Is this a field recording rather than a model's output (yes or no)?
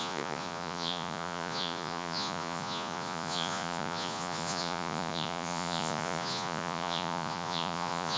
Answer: no